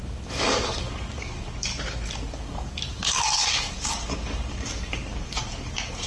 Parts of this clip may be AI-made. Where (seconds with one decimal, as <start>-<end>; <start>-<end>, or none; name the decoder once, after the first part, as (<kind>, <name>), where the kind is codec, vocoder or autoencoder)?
0.0-1.7 (codec, DAC); 2.3-6.1